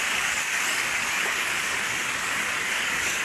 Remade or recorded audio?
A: remade